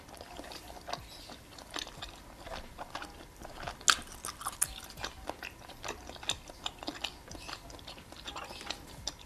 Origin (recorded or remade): recorded